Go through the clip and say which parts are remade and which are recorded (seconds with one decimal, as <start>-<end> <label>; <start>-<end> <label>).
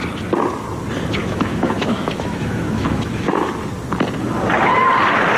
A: 0.0-1.2 recorded; 1.2-3.5 remade; 3.5-5.4 recorded